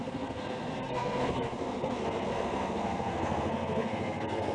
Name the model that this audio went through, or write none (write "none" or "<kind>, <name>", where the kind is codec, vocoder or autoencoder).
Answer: codec, SNAC